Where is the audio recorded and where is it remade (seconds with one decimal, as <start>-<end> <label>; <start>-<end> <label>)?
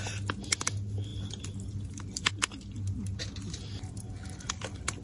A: 0.0-5.0 recorded